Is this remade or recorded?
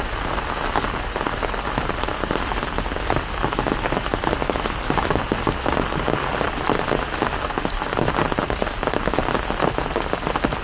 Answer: recorded